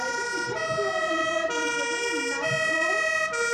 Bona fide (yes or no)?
yes